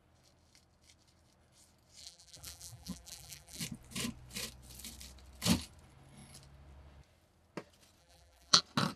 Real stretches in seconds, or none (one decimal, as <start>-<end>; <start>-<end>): 0.0-2.0; 3.6-8.0; 8.6-9.0